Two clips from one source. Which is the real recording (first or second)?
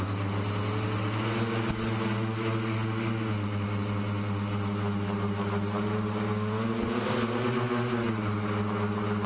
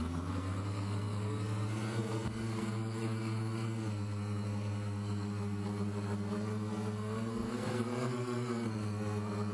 first